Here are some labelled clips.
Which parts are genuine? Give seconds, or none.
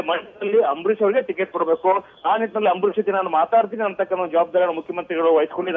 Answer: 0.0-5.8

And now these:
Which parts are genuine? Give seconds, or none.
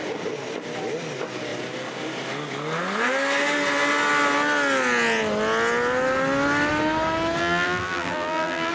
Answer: 0.0-7.4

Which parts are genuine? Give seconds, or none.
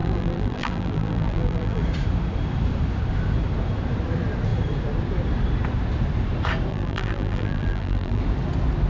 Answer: 1.8-6.7; 8.2-8.9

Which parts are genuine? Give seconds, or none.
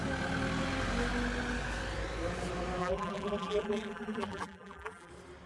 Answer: 0.0-2.8; 5.1-5.5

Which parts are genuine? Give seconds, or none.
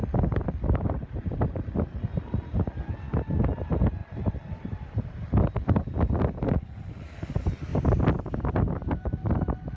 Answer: 0.0-4.0; 5.1-9.8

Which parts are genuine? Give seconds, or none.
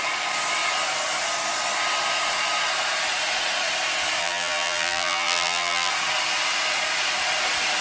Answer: 0.0-4.2; 5.9-7.8